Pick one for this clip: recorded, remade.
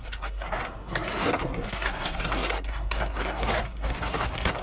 remade